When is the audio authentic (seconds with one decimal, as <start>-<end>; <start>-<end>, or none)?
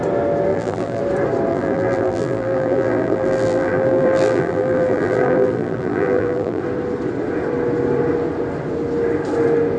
0.0-0.5; 1.0-1.5; 6.6-9.8